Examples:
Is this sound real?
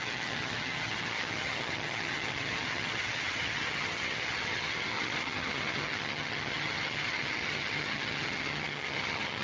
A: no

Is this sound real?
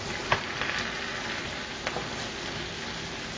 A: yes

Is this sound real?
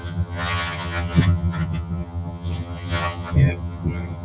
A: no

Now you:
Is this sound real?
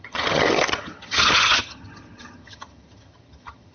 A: no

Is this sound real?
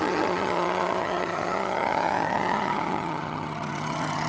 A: no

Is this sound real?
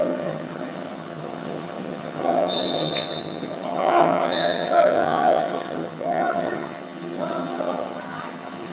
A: no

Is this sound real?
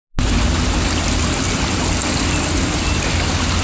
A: yes